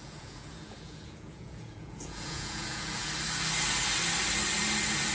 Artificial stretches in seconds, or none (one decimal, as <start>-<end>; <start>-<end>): 0.0-3.1